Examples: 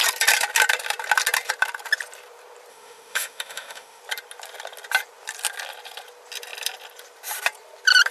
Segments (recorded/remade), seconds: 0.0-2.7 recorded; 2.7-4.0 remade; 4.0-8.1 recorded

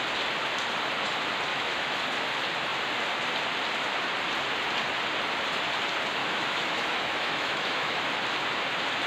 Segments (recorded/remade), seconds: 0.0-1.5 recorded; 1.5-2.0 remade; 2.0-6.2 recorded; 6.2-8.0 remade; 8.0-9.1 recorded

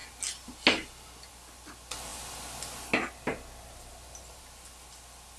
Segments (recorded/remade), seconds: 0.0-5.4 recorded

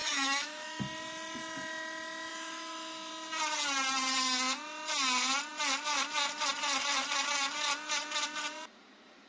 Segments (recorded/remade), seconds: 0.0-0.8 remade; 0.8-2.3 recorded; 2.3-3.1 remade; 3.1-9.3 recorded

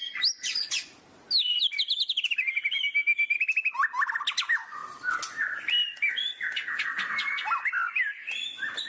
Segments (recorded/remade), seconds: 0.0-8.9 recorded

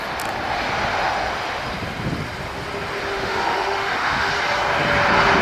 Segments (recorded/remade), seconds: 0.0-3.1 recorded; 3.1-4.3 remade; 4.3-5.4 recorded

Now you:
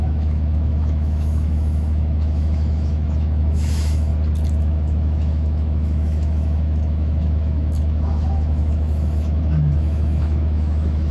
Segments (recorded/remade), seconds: 0.0-4.1 remade; 4.1-4.6 recorded; 4.6-11.1 remade